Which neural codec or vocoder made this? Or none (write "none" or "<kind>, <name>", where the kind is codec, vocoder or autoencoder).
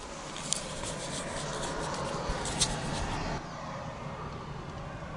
none